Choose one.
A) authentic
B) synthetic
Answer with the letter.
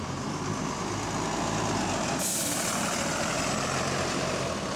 A